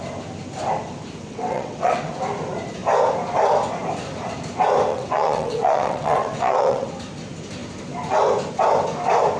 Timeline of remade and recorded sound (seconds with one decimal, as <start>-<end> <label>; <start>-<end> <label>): 0.0-1.2 recorded; 1.2-2.1 remade; 2.1-4.9 recorded; 4.9-6.9 remade; 6.9-9.4 recorded